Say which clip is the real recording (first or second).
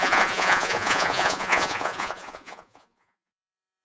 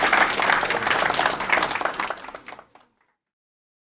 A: second